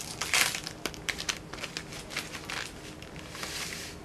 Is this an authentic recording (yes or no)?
yes